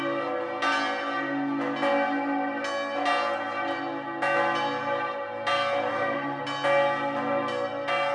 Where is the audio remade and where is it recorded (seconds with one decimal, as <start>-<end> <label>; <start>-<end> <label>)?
0.0-5.9 recorded; 5.9-6.4 remade; 6.4-8.1 recorded